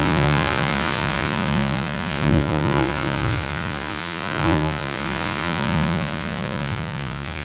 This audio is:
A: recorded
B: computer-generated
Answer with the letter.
B